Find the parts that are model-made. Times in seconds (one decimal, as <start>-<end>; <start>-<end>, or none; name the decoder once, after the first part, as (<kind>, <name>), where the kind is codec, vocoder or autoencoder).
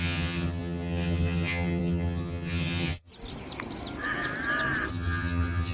0.0-3.1 (vocoder, HiFi-GAN); 4.9-5.7